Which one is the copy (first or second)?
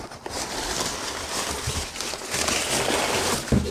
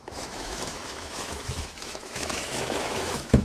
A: second